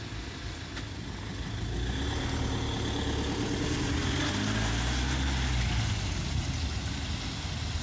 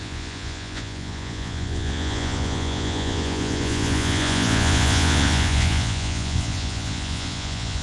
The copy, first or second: second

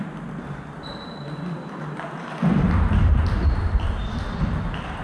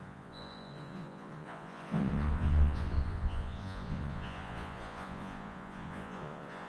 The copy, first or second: second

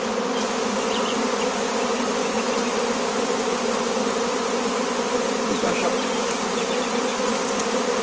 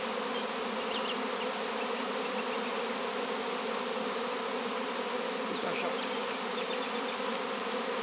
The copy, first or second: first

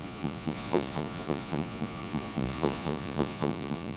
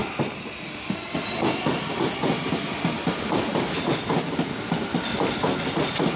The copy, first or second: first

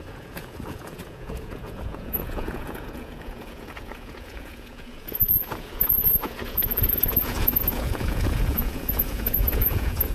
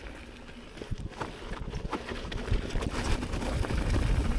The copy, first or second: first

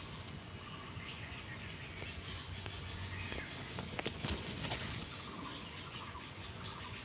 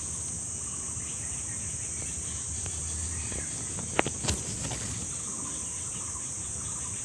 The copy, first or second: first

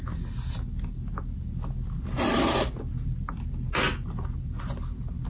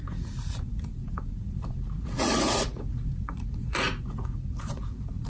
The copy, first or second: second